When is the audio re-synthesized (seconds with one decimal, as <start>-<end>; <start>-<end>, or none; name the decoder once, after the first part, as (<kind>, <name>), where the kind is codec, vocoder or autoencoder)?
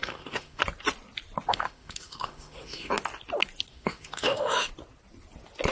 0.0-0.6 (autoencoder, DAC-VAE); 1.5-2.9; 3.7-4.7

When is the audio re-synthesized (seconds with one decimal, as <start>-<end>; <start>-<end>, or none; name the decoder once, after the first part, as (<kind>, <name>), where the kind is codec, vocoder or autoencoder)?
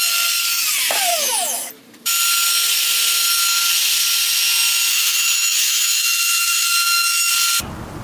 1.1-1.7 (autoencoder, DAC-VAE); 4.9-7.3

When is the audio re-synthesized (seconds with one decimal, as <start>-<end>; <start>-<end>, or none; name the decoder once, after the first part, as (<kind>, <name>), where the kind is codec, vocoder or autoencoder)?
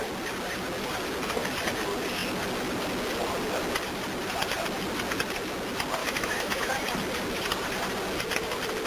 6.0-6.7 (autoencoder, DAC-VAE)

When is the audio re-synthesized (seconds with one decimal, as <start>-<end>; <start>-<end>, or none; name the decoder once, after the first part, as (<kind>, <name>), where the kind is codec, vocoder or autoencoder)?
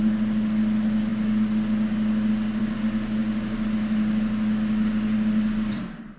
none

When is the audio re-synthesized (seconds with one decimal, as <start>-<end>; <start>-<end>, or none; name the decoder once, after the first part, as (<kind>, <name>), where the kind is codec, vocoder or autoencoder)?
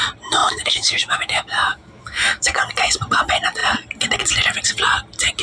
0.4-2.6 (autoencoder, DAC-VAE)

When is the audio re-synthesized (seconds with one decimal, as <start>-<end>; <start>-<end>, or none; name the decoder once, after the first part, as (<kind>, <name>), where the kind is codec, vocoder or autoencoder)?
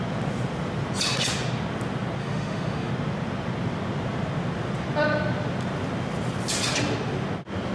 2.2-2.9 (autoencoder, DAC-VAE)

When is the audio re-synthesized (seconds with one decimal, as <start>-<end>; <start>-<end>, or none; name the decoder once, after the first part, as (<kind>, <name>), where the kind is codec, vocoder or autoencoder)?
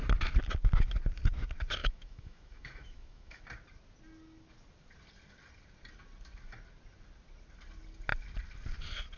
1.8-3.4 (autoencoder, DAC-VAE)